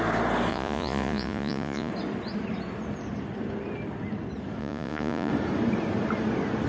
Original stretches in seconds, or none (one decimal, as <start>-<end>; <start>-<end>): 0.0-0.5; 1.9-4.6; 5.3-6.7